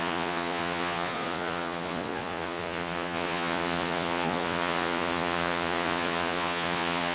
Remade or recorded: remade